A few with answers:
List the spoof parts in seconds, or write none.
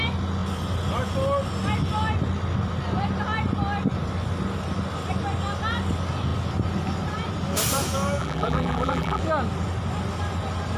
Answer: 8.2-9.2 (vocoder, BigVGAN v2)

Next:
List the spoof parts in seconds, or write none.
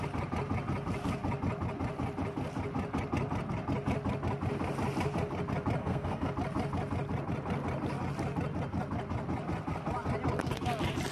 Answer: 5.8-6.3 (codec, SNAC)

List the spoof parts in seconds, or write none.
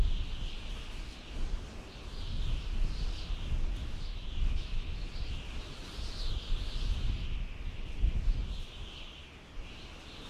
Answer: 3.8-5.0 (autoencoder, DAC-VAE)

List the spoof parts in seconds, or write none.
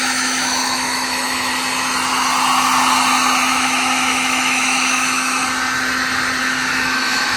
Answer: 0.0-1.5 (autoencoder, DAC-VAE); 3.5-5.4; 6.4-7.4